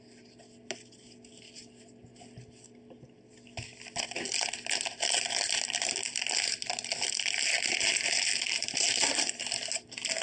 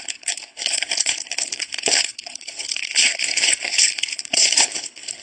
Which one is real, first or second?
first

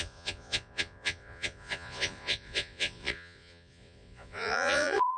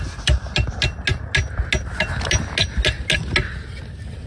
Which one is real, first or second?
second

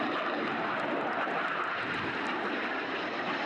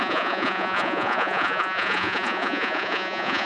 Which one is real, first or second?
first